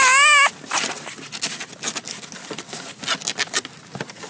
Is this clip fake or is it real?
real